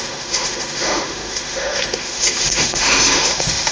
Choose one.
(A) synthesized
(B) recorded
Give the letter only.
A